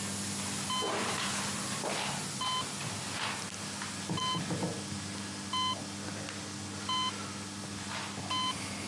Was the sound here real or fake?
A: real